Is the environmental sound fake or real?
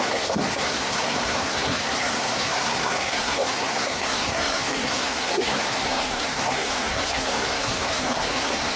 fake